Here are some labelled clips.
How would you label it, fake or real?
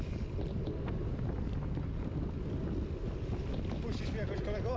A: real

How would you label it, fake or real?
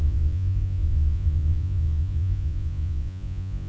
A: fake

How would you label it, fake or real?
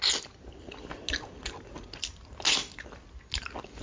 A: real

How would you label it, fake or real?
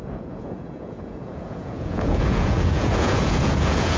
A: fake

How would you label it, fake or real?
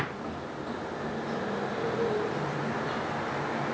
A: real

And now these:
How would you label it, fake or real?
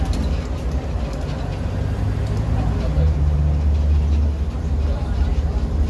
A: real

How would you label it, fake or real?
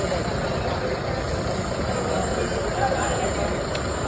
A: real